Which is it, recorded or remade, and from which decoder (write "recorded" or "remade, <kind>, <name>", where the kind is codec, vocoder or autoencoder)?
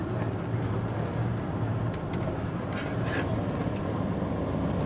recorded